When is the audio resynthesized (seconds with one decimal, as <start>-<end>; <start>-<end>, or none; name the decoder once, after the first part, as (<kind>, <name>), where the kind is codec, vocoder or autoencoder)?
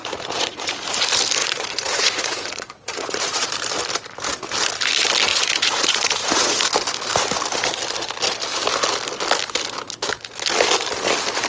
0.0-0.7 (vocoder, Vocos); 1.4-3.5; 5.3-6.7